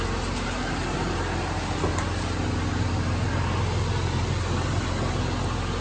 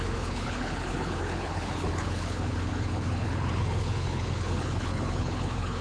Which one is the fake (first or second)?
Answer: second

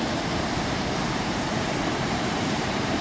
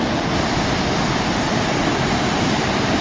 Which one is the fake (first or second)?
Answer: first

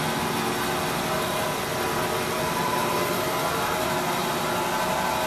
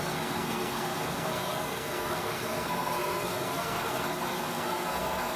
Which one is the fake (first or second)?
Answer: second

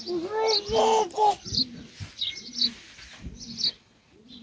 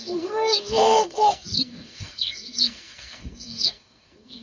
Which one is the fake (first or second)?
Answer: second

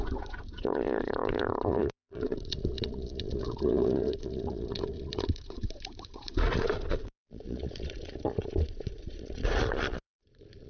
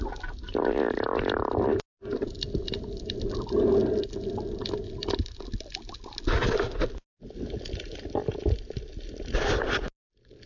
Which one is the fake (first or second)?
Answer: first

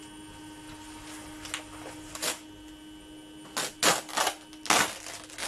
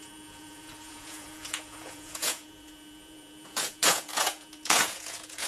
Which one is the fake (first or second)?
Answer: second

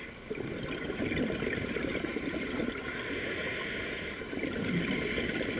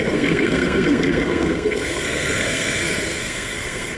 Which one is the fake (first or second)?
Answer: second